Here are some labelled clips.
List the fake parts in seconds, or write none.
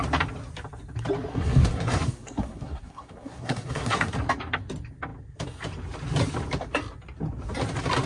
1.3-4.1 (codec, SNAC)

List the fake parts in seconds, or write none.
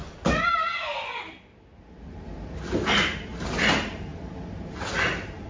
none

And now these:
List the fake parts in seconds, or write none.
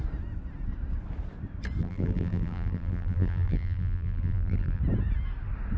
1.8-4.8 (vocoder, BigVGAN v2)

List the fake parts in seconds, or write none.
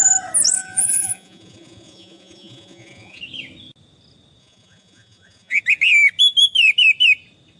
0.6-3.2 (vocoder, Vocos); 4.4-5.6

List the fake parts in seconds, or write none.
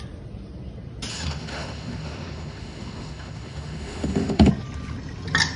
1.1-4.5 (autoencoder, DAC-VAE)